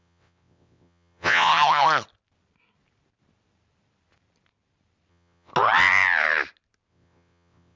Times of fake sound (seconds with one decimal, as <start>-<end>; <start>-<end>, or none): 0.0-1.5; 5.1-5.5; 6.9-7.8